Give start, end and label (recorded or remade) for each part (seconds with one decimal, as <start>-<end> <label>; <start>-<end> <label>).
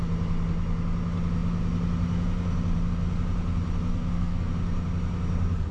0.0-3.9 recorded; 3.9-4.5 remade; 4.5-5.7 recorded